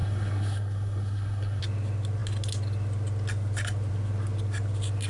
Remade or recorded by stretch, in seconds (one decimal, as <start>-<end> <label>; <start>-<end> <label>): 0.0-1.6 remade; 1.6-5.1 recorded

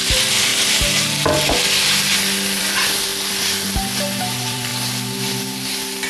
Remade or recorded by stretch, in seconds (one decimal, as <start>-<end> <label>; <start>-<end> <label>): 0.0-0.5 remade; 0.5-2.6 recorded; 2.6-3.1 remade; 3.1-4.2 recorded; 4.2-4.7 remade; 4.7-6.1 recorded

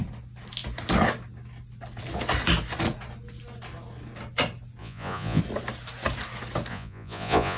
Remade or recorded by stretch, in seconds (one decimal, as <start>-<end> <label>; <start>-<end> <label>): 0.0-4.8 recorded; 4.8-5.4 remade; 5.4-6.7 recorded; 6.7-7.6 remade

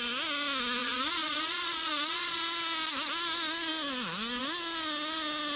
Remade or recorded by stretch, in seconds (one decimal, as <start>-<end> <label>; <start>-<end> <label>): 0.0-0.8 recorded; 0.8-2.4 remade; 2.4-5.6 recorded

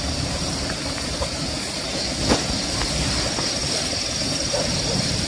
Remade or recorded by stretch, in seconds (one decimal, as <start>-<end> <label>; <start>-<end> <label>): 0.0-3.6 recorded; 3.6-5.3 remade